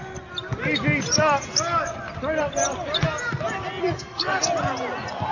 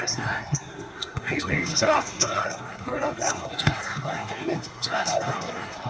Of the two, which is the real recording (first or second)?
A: first